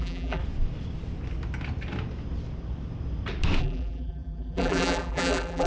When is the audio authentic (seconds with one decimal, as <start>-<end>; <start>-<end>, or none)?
0.4-3.6